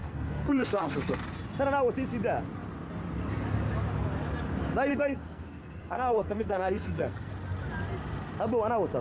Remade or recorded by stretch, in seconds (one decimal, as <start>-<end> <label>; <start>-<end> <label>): 0.0-1.2 remade; 1.2-4.9 recorded; 4.9-7.3 remade; 7.3-9.0 recorded